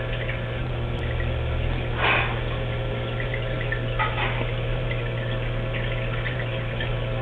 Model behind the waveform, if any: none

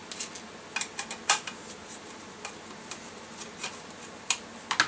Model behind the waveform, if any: none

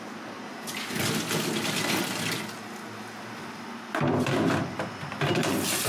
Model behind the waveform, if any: none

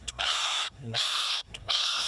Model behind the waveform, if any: codec, SNAC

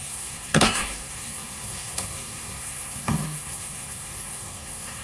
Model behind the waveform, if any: codec, SNAC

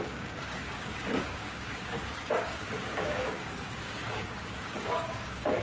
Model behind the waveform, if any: codec, DAC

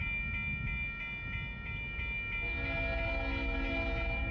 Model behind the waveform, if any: none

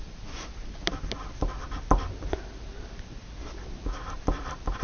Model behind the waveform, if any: none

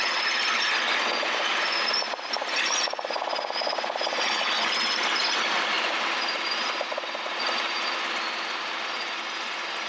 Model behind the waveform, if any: none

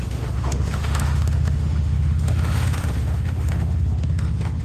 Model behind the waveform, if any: autoencoder, DAC-VAE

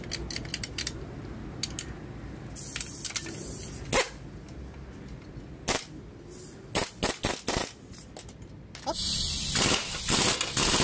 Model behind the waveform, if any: none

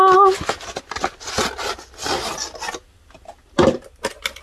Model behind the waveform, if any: none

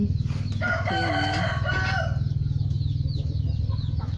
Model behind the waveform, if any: none